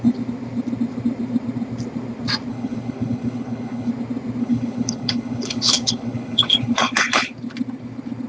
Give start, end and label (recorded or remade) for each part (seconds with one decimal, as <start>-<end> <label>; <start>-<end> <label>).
0.0-2.5 recorded; 2.5-3.9 remade; 3.9-4.4 recorded; 4.4-7.3 remade; 7.3-8.3 recorded